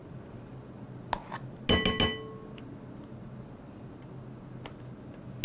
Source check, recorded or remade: recorded